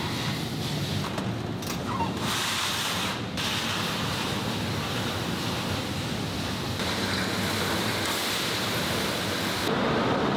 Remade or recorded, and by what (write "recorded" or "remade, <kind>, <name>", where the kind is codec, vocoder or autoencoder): recorded